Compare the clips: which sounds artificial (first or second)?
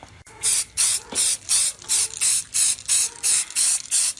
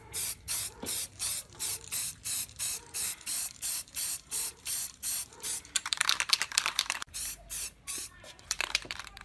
second